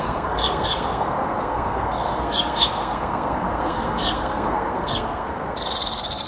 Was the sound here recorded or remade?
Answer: remade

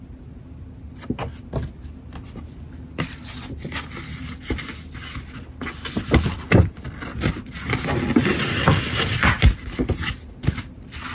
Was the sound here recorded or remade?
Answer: recorded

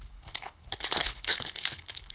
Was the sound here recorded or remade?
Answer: remade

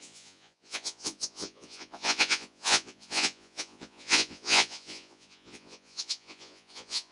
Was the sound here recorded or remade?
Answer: remade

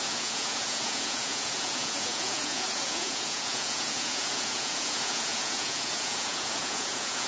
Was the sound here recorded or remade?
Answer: remade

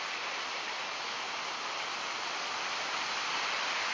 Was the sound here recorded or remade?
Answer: recorded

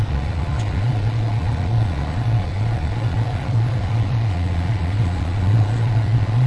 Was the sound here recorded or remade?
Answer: remade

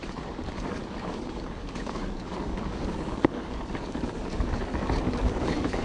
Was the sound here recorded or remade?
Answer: remade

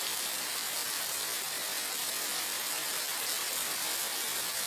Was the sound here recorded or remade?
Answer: recorded